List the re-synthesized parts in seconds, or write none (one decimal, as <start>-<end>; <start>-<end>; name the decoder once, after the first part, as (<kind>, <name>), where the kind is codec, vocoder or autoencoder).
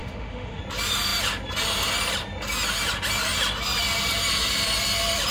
0.0-0.6 (autoencoder, DAC-VAE)